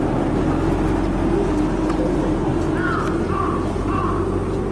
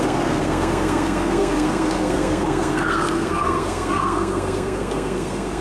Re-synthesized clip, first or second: second